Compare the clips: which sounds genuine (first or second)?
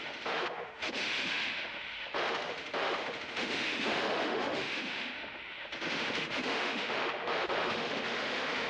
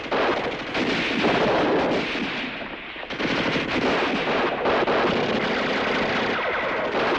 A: second